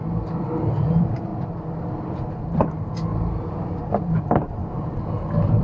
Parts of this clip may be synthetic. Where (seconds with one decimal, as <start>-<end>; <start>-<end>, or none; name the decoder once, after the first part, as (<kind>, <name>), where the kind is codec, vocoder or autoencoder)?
0.7-1.3 (vocoder, BigVGAN v2); 2.3-4.6